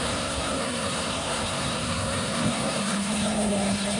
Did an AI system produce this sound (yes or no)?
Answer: yes